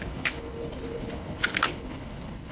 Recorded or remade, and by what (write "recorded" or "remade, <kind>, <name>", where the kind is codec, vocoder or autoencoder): remade, codec, HILCodec